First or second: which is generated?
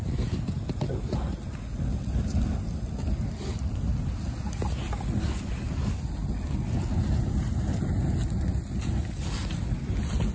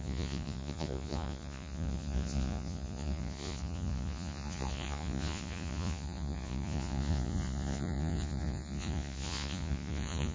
second